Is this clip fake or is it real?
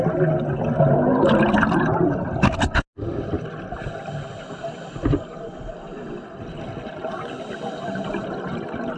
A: real